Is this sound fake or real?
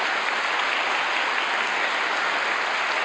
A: real